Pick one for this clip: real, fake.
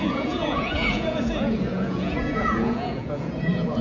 fake